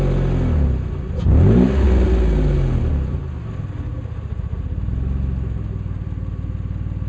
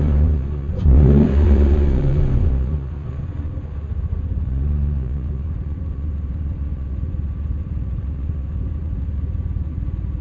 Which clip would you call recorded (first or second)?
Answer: first